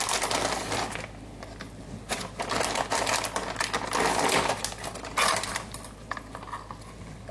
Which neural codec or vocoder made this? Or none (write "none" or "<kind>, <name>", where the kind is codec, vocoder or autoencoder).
none